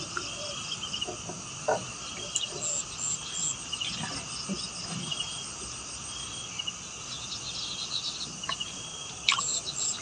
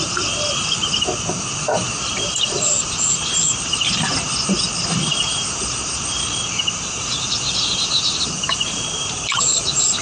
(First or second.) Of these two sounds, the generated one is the second